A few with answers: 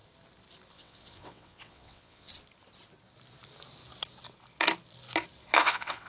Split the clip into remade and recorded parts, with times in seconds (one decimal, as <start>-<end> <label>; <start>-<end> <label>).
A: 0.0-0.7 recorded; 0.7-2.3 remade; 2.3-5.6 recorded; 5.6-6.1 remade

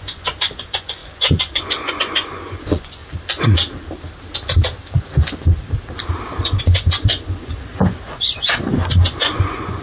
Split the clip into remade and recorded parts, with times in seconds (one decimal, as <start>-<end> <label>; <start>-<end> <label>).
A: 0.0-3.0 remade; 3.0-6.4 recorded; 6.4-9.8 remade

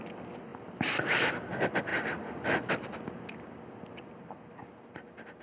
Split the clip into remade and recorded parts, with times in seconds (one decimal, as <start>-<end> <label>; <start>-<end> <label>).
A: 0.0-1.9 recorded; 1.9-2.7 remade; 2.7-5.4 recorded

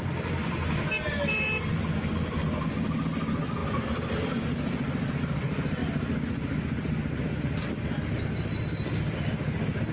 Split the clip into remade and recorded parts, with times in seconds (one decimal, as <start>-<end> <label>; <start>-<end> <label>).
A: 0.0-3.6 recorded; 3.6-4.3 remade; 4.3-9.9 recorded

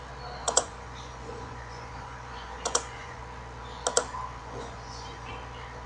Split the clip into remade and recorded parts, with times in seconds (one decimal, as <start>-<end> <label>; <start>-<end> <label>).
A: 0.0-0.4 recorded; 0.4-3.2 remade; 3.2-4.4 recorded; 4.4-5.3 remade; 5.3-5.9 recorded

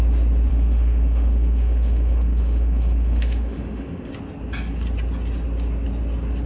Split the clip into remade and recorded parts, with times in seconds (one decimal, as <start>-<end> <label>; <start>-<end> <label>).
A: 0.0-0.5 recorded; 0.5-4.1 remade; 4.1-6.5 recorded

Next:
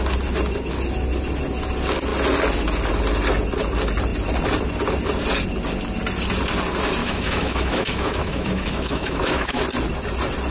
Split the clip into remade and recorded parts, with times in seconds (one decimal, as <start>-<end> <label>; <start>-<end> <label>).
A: 0.0-7.0 recorded; 7.0-9.6 remade; 9.6-10.5 recorded